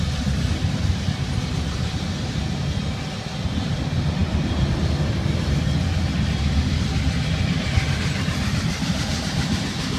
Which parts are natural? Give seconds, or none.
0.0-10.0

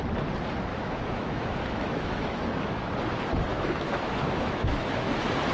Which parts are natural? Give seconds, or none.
0.0-0.7; 2.9-3.5; 5.1-5.5

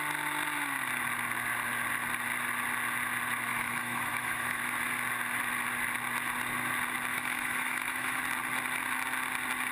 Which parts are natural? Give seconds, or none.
0.0-3.5; 4.6-7.1; 8.2-9.7

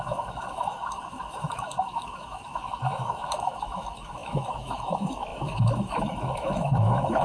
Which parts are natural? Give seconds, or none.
none

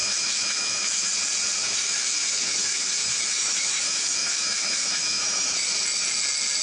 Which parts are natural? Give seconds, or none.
1.1-1.7; 5.7-6.6